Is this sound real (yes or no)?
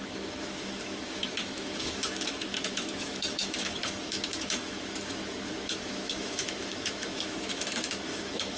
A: no